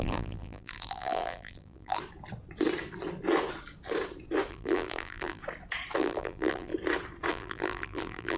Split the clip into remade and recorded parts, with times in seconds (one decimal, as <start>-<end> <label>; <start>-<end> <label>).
0.0-2.0 remade; 2.0-4.5 recorded; 4.5-5.4 remade; 5.4-6.0 recorded; 6.0-6.7 remade; 6.7-7.3 recorded; 7.3-8.4 remade